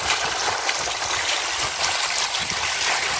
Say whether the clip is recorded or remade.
recorded